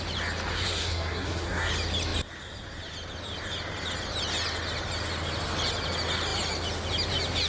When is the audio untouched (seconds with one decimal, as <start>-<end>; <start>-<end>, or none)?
0.0-0.5; 1.7-7.5